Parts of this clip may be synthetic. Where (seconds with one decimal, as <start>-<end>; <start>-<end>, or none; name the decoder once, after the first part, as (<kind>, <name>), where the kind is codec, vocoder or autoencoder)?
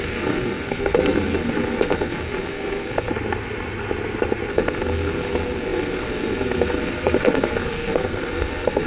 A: 0.0-3.1 (codec, SNAC); 4.5-8.9